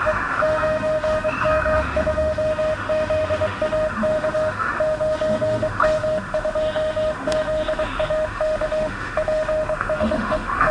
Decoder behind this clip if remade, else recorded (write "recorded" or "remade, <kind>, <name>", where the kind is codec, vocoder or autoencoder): remade, autoencoder, DAC-VAE